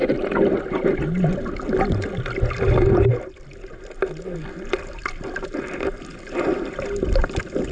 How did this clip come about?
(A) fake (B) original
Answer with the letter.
B